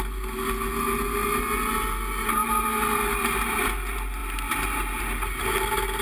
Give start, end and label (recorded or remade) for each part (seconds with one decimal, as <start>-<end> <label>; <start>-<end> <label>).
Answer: 0.0-6.0 recorded